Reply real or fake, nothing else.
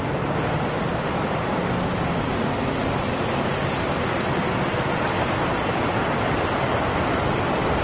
real